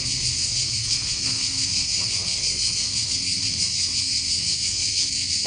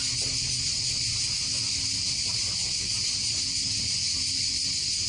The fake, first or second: first